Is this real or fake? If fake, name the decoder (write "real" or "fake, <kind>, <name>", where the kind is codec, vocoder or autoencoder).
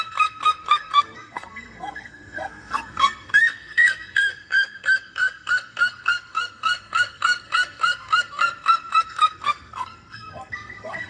fake, codec, SNAC